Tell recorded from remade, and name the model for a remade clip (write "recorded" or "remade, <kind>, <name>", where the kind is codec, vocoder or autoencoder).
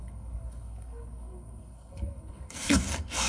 remade, codec, SNAC